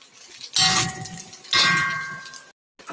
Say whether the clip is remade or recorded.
recorded